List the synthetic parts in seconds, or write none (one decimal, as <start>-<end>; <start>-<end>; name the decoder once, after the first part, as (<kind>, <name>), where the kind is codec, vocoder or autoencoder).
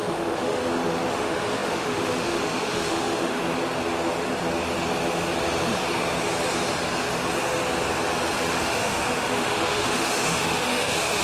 0.0-0.6 (autoencoder, DAC-VAE); 1.1-3.4; 8.6-11.2